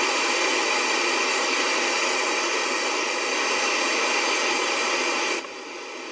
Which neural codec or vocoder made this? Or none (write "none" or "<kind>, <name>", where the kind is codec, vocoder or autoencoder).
none